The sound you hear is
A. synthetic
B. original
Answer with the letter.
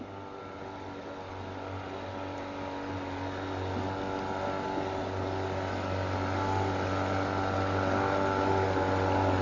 B